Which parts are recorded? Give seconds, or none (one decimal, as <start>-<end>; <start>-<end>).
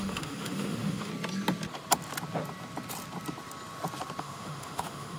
1.1-4.2